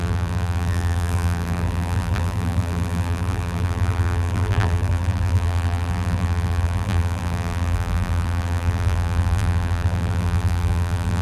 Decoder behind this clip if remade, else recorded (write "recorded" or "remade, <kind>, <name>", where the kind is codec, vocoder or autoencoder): remade, vocoder, BigVGAN v2